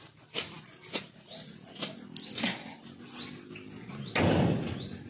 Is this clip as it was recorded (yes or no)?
yes